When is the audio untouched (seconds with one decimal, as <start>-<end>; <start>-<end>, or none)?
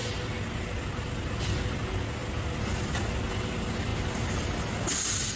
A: 0.0-5.4